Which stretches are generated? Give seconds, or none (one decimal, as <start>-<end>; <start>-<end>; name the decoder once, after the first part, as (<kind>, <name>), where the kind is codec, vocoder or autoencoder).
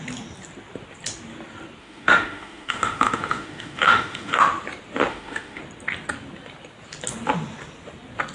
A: 1.8-4.4 (autoencoder, DAC-VAE); 5.1-5.6